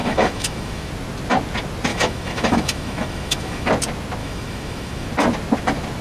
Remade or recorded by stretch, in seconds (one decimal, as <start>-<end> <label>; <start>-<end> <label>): 0.0-0.9 remade; 0.9-1.9 recorded; 1.9-3.7 remade; 3.7-4.2 recorded; 4.2-5.1 remade; 5.1-6.0 recorded